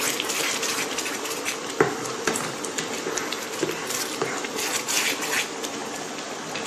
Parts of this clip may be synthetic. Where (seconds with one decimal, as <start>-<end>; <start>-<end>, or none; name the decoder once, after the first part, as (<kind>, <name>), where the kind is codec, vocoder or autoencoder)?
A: none